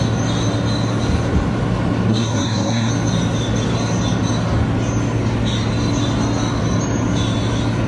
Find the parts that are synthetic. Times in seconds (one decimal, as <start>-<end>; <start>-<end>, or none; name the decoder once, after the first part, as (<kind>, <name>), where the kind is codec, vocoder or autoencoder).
2.1-2.9 (codec, SNAC)

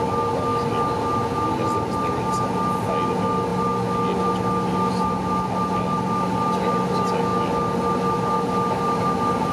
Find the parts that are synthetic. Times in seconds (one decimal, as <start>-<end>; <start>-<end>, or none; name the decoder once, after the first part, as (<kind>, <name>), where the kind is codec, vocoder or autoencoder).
none

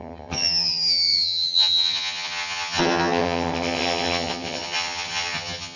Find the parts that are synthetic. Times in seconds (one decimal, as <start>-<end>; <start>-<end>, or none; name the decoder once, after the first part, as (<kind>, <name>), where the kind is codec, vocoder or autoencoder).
0.0-5.8 (vocoder, HiFi-GAN)

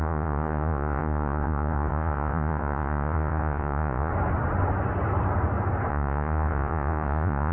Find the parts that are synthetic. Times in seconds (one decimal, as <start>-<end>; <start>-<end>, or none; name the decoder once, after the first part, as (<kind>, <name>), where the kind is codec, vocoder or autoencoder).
0.0-4.1 (vocoder, Vocos); 5.9-7.5

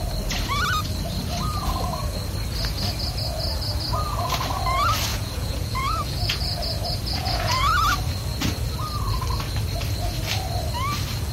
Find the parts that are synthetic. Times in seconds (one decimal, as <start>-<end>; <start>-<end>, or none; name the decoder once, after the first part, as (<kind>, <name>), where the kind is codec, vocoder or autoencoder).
5.1-6.4 (vocoder, Vocos); 7.2-7.8

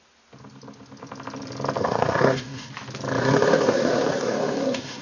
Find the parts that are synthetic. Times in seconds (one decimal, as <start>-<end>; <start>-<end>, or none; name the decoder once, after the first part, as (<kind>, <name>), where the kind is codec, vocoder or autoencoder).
1.8-2.7 (codec, SNAC); 3.2-5.0

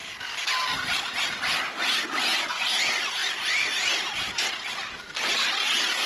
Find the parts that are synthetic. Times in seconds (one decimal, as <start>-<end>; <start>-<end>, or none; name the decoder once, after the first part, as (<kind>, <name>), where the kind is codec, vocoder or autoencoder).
none